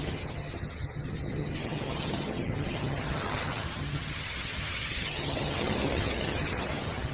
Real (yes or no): no